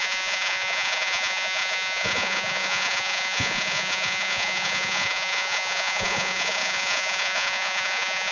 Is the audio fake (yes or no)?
yes